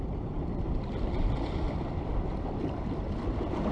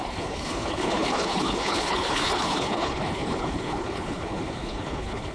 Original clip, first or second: first